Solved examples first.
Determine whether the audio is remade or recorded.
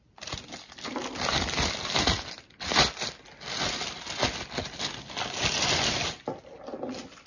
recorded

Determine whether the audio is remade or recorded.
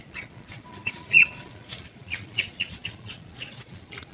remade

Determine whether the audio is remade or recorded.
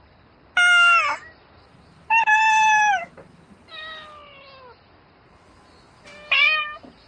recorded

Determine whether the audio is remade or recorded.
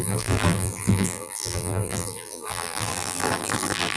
remade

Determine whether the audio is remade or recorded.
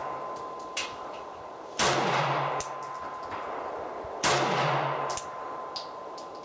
recorded